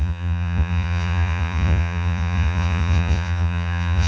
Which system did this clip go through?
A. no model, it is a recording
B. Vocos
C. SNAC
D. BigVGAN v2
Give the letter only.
B